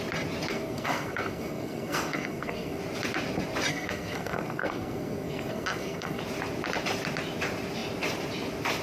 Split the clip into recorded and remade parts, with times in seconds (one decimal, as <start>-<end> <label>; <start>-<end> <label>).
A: 0.0-0.5 recorded; 0.5-2.8 remade; 2.8-3.7 recorded; 3.7-6.2 remade; 6.2-8.8 recorded